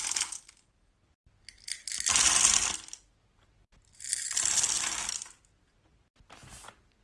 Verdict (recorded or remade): recorded